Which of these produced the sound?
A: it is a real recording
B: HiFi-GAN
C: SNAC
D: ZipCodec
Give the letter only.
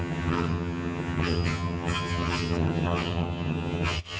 B